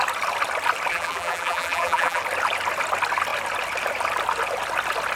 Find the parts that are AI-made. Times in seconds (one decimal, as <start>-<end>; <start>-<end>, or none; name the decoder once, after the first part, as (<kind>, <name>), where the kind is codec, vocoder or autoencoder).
0.9-2.2 (vocoder, BigVGAN v2)